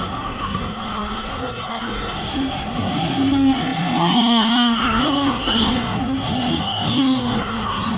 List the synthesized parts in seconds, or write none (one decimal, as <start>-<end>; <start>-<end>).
0.0-8.0